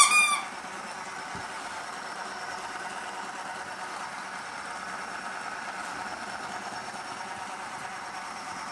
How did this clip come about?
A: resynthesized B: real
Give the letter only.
B